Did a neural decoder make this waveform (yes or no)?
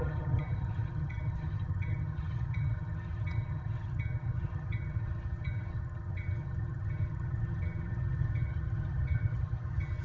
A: yes